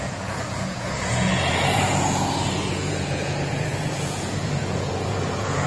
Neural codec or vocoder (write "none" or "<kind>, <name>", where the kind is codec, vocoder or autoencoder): vocoder, Vocos